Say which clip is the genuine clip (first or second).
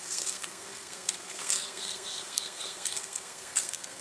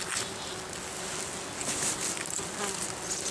second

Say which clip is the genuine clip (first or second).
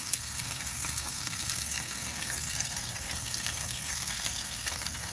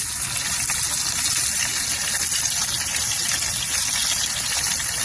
second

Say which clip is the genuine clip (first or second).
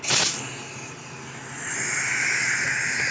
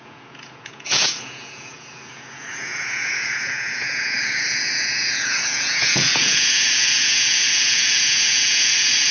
first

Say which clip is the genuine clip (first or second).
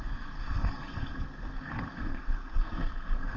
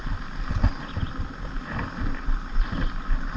second